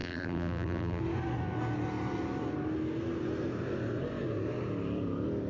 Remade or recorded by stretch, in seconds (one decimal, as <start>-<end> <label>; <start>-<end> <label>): 0.0-1.0 remade; 1.0-5.5 recorded